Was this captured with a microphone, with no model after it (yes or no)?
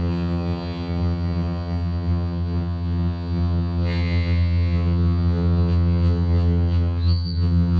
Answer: no